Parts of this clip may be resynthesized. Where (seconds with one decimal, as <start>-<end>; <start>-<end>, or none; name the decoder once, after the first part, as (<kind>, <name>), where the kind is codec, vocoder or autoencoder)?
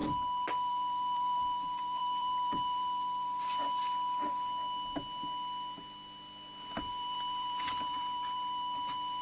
0.5-3.8 (vocoder, BigVGAN v2); 6.9-9.2